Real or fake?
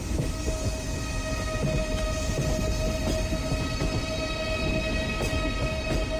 real